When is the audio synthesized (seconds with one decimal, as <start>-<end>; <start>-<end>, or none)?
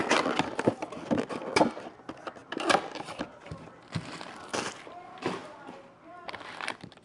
none